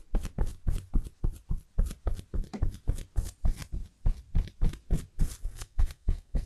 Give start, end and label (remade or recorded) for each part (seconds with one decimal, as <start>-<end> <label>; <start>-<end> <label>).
0.0-5.5 recorded; 5.5-6.5 remade